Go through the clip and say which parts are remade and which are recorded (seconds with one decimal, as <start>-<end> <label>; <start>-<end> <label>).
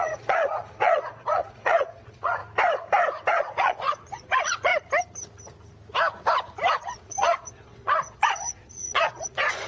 0.0-2.4 remade; 2.4-3.3 recorded; 3.3-4.7 remade; 4.7-6.7 recorded; 6.7-9.7 remade